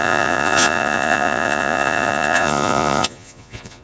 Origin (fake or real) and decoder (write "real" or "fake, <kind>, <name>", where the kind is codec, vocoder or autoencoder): fake, vocoder, Vocos